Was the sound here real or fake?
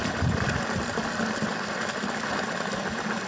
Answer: real